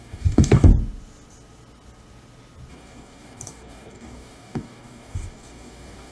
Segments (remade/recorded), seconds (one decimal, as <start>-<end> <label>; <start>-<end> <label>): 0.0-0.7 remade; 0.7-2.7 recorded; 2.7-6.1 remade